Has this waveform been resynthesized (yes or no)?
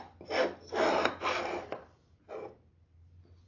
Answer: no